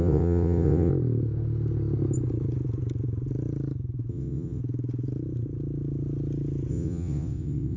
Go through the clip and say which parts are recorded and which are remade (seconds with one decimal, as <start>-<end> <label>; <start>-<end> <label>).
0.0-0.9 remade; 0.9-4.1 recorded; 4.1-4.6 remade; 4.6-6.7 recorded; 6.7-7.8 remade